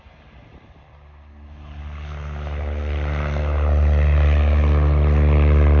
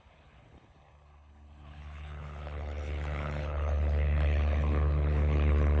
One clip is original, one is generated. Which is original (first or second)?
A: first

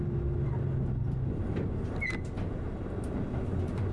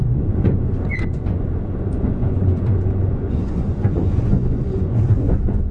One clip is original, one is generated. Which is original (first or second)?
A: first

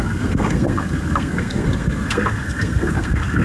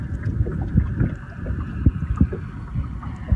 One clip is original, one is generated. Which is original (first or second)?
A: second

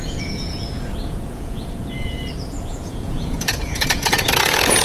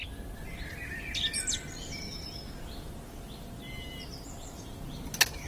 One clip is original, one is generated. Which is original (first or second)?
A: second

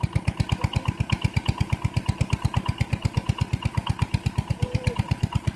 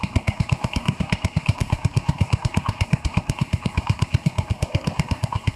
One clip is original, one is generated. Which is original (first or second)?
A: first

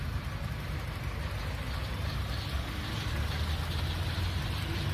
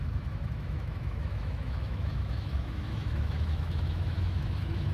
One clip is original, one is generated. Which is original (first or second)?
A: first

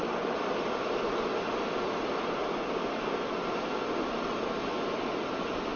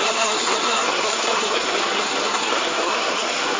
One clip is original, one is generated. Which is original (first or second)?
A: first